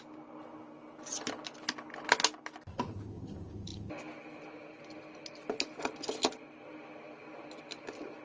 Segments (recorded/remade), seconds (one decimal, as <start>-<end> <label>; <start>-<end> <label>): 0.0-8.2 recorded